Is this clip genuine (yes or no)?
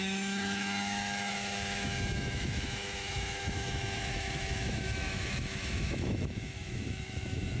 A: no